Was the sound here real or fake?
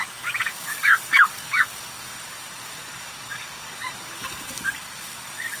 fake